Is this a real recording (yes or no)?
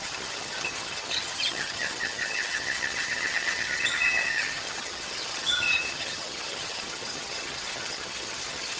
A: no